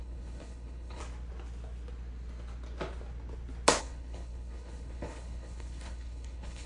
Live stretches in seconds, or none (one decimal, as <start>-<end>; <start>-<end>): 1.0-3.8